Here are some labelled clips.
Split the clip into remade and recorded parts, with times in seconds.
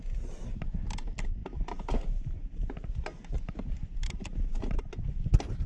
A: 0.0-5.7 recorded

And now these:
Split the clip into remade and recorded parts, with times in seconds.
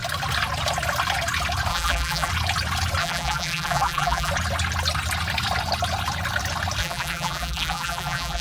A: 0.0-1.7 recorded; 1.7-2.3 remade; 2.3-3.0 recorded; 3.0-4.3 remade; 4.3-6.8 recorded; 6.8-8.4 remade